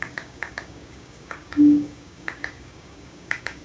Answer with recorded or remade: remade